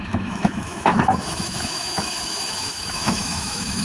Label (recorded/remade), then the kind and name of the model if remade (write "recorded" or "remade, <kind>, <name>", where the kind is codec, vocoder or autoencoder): remade, autoencoder, DAC-VAE